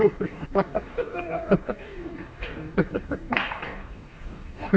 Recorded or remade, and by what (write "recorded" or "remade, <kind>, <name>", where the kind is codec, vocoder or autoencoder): remade, codec, DAC